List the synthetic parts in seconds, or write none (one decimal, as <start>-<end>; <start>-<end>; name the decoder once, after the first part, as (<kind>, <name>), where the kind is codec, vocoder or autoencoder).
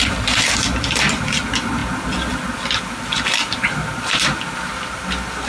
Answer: none